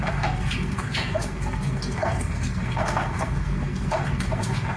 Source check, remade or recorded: remade